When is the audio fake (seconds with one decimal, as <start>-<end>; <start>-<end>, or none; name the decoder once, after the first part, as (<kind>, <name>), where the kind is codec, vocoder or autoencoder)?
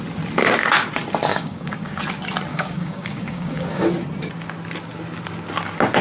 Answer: 1.3-2.0 (codec, DAC); 2.5-3.8